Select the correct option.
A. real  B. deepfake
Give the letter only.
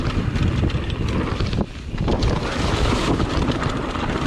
A